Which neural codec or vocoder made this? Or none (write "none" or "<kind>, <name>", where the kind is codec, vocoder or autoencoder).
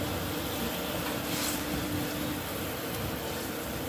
none